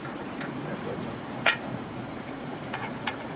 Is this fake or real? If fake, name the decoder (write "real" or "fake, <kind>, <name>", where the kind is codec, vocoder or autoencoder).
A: fake, vocoder, Vocos